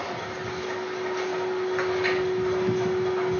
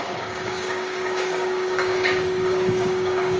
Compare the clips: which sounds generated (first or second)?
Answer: second